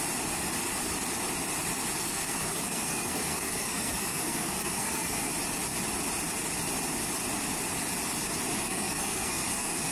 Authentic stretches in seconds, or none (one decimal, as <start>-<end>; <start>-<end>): 0.0-2.0; 5.3-8.5